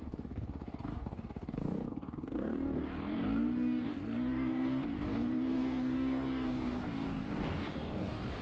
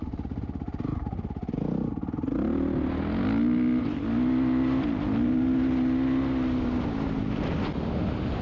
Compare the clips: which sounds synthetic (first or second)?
first